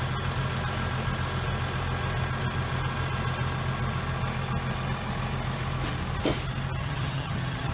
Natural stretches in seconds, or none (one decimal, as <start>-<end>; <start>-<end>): 0.0-6.8